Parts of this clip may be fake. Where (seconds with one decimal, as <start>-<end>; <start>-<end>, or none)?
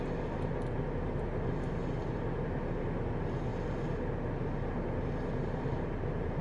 none